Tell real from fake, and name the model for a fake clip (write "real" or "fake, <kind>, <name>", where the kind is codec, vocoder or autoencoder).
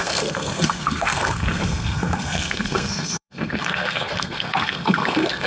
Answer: fake, codec, SNAC